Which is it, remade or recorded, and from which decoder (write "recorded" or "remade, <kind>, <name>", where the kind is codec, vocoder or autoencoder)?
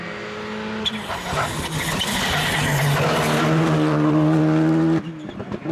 recorded